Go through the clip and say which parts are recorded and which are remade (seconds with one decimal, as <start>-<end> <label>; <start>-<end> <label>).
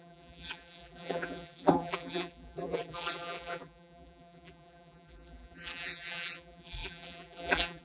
0.0-7.8 remade